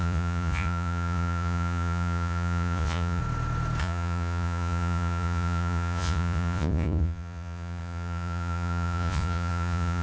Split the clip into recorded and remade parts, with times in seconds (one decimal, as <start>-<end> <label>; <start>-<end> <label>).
0.0-3.2 remade; 3.2-3.8 recorded; 3.8-10.0 remade